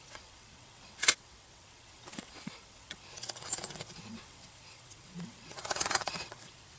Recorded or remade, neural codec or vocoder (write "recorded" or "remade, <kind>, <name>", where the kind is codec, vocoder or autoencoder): remade, vocoder, WaveNeXt